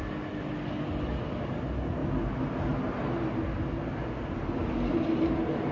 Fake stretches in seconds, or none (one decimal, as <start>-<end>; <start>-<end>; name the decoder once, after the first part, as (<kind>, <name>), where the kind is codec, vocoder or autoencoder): none